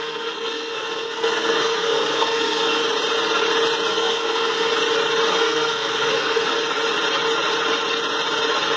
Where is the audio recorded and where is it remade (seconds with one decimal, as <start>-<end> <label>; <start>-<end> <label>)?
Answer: 0.0-2.8 remade; 2.8-3.9 recorded; 3.9-4.7 remade; 4.7-5.3 recorded; 5.3-6.5 remade; 6.5-8.8 recorded